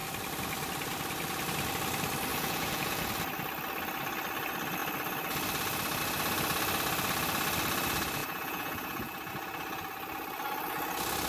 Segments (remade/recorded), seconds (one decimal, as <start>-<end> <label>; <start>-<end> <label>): 0.0-2.3 recorded; 2.3-3.1 remade; 3.1-8.2 recorded; 8.2-9.3 remade; 9.3-11.3 recorded